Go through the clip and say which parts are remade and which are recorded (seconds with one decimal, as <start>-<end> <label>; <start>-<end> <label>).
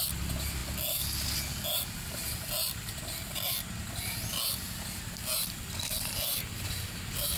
0.0-7.4 recorded